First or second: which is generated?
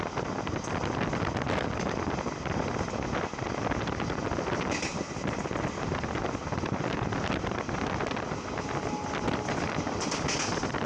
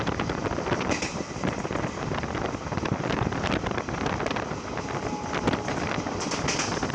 second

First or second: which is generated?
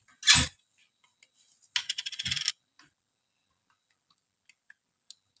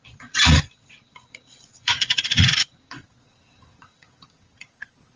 second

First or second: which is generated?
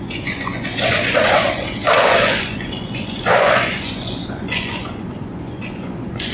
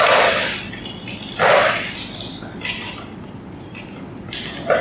first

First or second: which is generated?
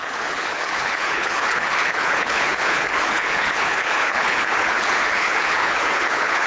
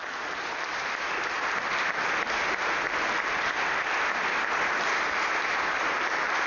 first